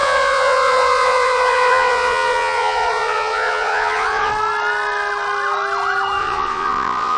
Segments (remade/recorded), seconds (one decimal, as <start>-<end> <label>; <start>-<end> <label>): 0.0-4.3 remade; 4.3-6.2 recorded; 6.2-7.2 remade